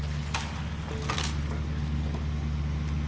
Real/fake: real